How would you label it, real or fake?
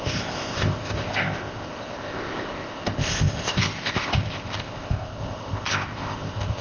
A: fake